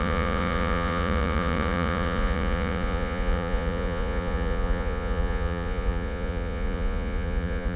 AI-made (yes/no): yes